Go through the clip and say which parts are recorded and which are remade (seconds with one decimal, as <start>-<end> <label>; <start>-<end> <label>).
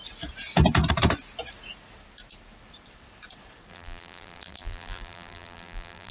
0.0-3.7 recorded; 3.7-6.1 remade